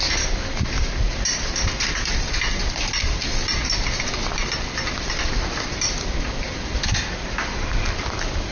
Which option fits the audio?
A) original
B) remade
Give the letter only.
A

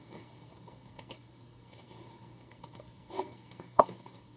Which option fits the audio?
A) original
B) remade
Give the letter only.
B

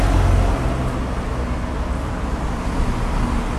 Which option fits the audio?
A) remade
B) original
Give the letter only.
B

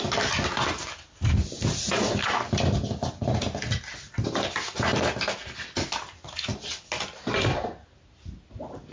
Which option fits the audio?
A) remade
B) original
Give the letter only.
B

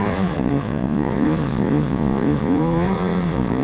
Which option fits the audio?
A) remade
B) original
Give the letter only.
A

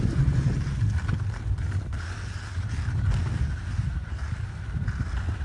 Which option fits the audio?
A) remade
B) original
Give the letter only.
B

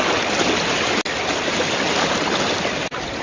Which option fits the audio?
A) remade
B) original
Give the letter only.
B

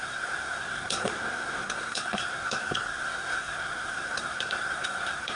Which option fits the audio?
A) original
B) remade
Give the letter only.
B